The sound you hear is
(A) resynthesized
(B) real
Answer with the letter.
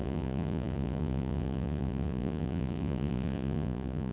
A